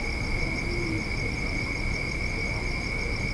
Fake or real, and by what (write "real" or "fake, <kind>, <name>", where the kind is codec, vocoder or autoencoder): real